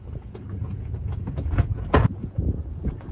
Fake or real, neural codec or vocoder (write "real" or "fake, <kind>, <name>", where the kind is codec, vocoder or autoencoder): fake, vocoder, Vocos